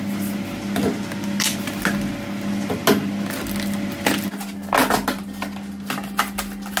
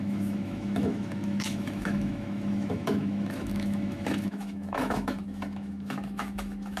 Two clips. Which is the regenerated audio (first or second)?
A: second